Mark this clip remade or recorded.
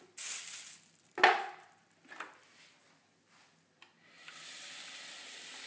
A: recorded